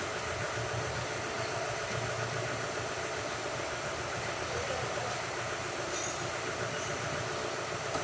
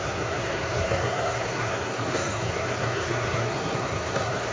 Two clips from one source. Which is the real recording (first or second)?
first